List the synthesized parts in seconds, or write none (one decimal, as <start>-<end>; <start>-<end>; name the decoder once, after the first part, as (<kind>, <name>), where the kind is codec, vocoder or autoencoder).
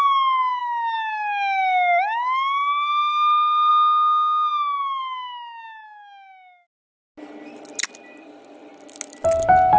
0.6-3.7 (autoencoder, DAC-VAE)